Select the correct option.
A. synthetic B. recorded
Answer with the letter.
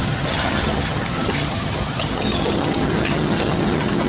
A